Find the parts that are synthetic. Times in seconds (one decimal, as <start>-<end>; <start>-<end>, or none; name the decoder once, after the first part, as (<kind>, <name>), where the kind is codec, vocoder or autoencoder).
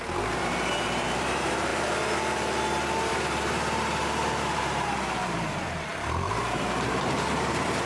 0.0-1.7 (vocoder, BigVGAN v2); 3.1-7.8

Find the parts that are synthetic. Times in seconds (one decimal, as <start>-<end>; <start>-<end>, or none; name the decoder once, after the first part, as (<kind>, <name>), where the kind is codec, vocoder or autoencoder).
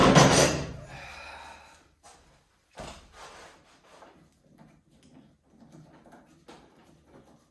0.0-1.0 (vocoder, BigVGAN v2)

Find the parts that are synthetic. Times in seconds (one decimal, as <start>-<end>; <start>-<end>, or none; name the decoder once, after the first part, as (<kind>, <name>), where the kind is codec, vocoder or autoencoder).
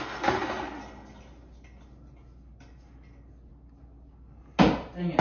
none